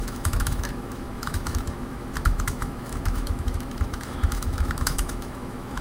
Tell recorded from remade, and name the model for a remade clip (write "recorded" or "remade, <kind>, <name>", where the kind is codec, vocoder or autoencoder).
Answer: remade, autoencoder, DAC-VAE